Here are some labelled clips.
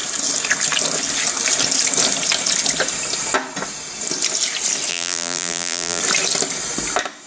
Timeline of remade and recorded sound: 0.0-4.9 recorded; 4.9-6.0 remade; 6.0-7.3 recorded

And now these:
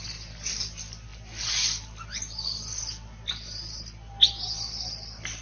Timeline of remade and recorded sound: 0.0-5.4 recorded

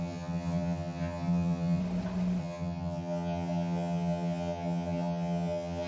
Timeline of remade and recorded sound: 0.0-1.8 remade; 1.8-2.4 recorded; 2.4-5.9 remade

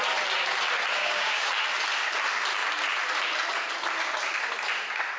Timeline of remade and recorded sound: 0.0-1.0 recorded; 1.0-1.5 remade; 1.5-5.2 recorded

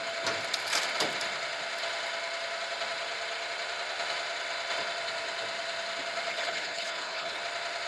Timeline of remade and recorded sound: 0.0-6.3 recorded; 6.3-7.4 remade; 7.4-7.9 recorded

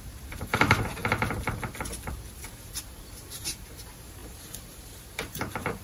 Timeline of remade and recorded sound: 0.0-1.0 remade; 1.0-2.1 recorded; 2.1-5.8 remade

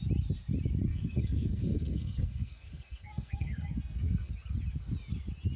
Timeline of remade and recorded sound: 0.0-0.9 recorded; 0.9-4.3 remade; 4.3-5.6 recorded

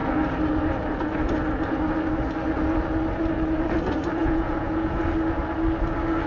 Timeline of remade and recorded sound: 0.0-4.2 recorded; 4.2-5.0 remade; 5.0-6.3 recorded